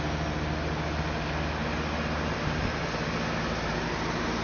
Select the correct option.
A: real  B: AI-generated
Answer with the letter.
A